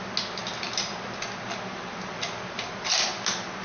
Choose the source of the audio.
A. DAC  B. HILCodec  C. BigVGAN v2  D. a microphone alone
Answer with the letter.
D